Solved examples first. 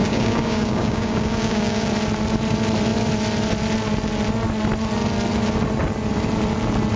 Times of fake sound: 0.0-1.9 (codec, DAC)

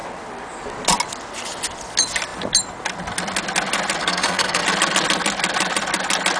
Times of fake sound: 4.0-4.6 (codec, SNAC)

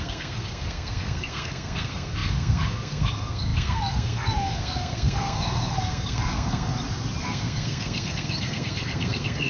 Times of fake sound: 0.0-6.7 (codec, SNAC); 7.2-9.5

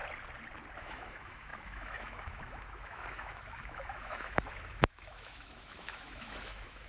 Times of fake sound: 0.8-6.9 (autoencoder, DAC-VAE)

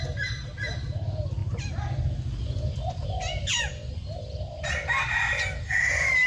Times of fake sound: none

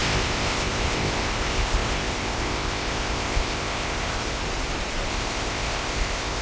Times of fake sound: 0.0-4.4 (codec, ZipCodec); 5.1-6.4

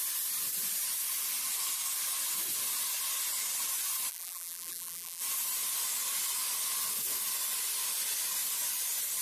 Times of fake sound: 4.1-5.2 (vocoder, BigVGAN v2)